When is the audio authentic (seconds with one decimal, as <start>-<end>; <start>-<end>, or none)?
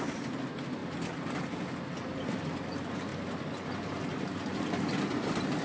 0.0-5.6